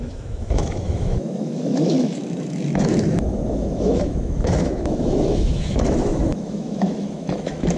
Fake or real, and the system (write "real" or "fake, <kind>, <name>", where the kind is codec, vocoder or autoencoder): fake, autoencoder, DAC-VAE